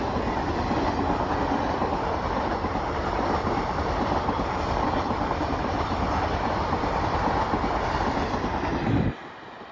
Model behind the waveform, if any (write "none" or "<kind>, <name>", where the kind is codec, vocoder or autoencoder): none